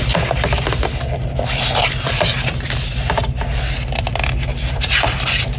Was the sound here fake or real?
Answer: real